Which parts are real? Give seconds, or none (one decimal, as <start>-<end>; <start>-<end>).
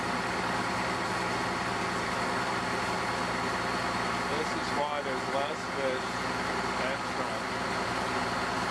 0.0-8.7